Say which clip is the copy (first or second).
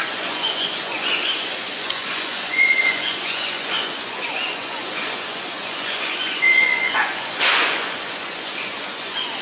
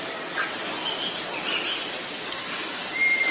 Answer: first